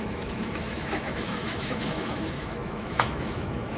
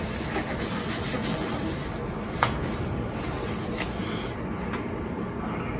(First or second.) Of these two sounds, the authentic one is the second